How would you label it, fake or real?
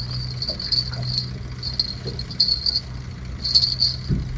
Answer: real